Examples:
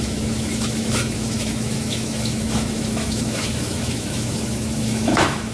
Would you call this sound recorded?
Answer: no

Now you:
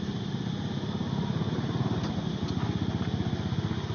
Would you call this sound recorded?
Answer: yes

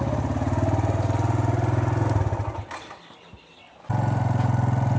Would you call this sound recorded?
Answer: yes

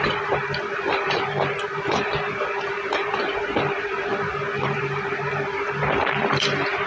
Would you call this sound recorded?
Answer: no